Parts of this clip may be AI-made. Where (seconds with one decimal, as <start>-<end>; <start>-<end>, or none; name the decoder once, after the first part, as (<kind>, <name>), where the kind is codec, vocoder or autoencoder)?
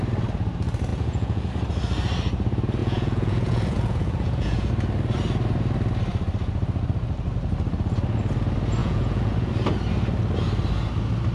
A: 0.9-1.5 (vocoder, Vocos); 2.8-4.7; 8.8-9.5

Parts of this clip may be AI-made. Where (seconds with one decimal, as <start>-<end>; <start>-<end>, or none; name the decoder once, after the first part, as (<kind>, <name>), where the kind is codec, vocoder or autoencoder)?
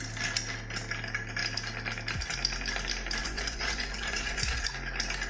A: 3.2-4.7 (vocoder, Vocos)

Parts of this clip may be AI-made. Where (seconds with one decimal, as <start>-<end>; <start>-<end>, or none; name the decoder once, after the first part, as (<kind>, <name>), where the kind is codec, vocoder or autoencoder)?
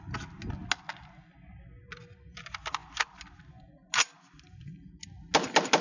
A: none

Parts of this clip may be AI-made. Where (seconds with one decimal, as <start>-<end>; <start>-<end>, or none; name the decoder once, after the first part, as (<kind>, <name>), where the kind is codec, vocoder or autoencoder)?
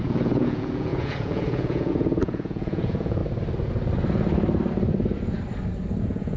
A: 0.0-3.2 (vocoder, Vocos); 6.0-6.4